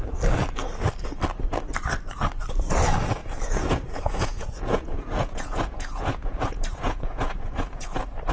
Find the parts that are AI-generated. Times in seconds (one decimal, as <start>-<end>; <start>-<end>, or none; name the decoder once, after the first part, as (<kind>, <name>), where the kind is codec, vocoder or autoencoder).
3.2-7.9 (vocoder, Vocos)